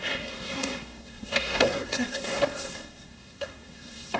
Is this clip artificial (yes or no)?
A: yes